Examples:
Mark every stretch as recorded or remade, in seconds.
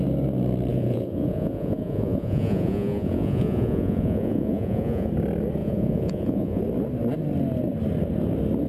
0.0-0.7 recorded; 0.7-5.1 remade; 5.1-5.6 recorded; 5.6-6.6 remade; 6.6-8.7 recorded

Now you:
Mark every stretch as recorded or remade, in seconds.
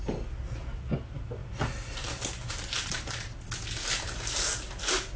0.0-5.2 recorded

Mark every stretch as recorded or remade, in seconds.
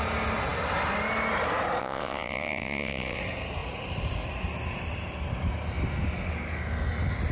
0.0-1.8 recorded; 1.8-3.2 remade; 3.2-7.3 recorded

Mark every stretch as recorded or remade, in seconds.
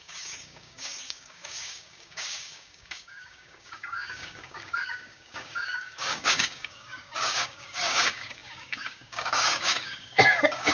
0.0-10.7 remade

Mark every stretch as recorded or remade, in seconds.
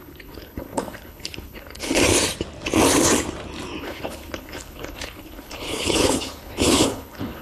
0.0-2.0 remade; 2.0-3.8 recorded; 3.8-7.4 remade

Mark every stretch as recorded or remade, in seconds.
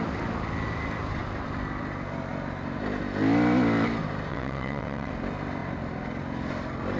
0.0-4.3 recorded; 4.3-5.1 remade; 5.1-7.0 recorded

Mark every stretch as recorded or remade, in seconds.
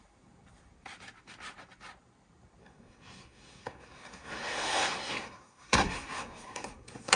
0.0-2.6 recorded; 2.6-7.2 remade